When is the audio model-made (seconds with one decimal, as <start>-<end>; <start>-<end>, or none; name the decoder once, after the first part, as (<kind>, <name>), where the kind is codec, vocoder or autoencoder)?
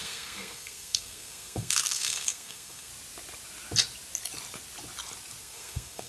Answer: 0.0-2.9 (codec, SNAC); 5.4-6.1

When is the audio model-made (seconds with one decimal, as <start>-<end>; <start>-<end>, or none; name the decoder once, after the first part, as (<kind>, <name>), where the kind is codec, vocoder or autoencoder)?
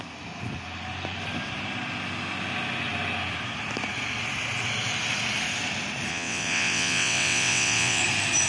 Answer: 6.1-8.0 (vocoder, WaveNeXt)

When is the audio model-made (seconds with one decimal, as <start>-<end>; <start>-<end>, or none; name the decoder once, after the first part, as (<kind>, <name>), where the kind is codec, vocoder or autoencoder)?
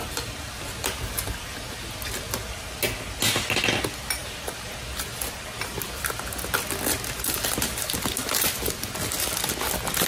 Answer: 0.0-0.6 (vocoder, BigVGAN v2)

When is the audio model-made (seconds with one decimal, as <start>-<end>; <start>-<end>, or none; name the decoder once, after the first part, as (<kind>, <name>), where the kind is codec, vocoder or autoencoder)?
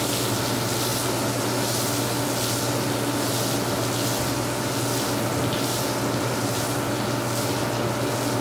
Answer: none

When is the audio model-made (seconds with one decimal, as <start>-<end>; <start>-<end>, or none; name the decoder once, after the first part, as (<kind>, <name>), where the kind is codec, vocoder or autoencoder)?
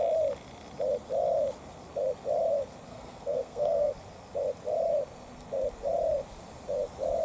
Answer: 2.9-3.9 (codec, SNAC)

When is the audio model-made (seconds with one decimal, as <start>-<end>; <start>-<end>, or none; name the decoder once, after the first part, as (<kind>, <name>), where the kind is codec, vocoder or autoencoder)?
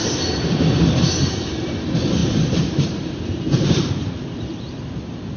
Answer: 0.0-1.3 (vocoder, BigVGAN v2); 2.2-5.4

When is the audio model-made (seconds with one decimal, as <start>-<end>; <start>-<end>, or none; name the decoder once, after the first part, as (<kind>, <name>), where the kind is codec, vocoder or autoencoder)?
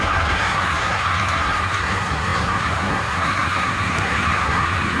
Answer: 0.0-5.0 (codec, SNAC)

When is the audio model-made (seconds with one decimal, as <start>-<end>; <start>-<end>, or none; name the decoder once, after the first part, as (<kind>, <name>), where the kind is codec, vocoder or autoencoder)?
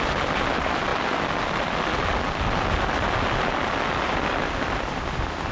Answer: none